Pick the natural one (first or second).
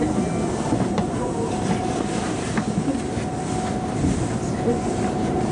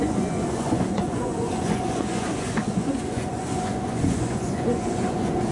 first